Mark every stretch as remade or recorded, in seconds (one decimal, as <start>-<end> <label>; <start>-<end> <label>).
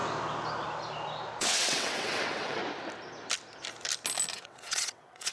0.0-1.4 recorded; 1.4-2.6 remade; 2.6-4.3 recorded; 4.3-5.3 remade